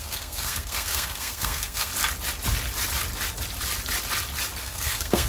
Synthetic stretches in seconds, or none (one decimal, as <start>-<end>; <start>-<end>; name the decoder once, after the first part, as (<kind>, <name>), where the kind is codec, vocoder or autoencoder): 0.0-1.9 (codec, SNAC); 4.6-5.3